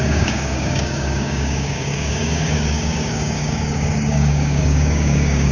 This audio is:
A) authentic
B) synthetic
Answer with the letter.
B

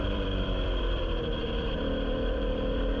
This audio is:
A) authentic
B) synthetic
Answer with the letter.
B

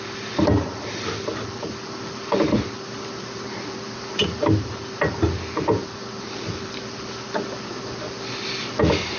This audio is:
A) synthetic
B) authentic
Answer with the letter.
A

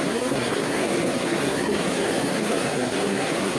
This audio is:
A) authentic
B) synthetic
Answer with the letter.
B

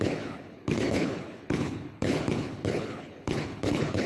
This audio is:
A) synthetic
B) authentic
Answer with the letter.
A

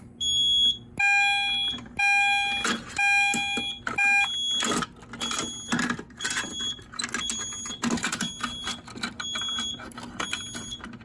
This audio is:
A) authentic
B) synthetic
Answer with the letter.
A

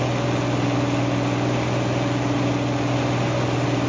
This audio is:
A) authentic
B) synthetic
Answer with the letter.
A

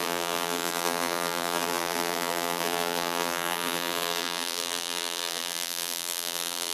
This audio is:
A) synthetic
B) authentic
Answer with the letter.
A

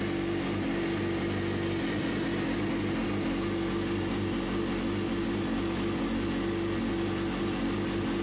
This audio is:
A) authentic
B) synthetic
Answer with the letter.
A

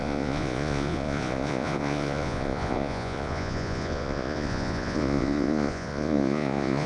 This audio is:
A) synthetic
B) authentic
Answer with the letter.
A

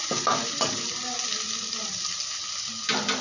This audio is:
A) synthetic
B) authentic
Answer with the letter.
B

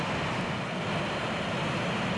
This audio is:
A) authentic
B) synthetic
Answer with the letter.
A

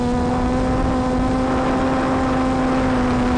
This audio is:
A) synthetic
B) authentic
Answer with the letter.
B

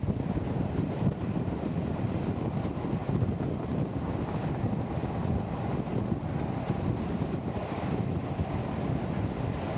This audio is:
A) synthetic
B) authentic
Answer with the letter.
B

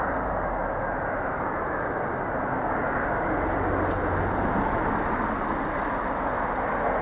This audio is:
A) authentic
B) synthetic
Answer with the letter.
A